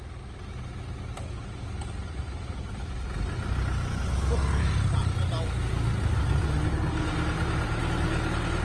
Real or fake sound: real